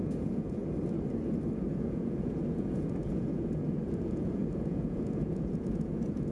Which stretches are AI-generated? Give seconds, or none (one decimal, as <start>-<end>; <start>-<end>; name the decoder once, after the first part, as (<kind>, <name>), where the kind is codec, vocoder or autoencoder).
0.0-0.6 (vocoder, Vocos); 1.6-6.3